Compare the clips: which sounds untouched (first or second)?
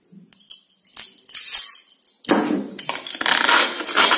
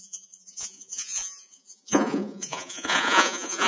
first